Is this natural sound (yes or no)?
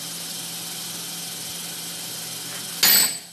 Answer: yes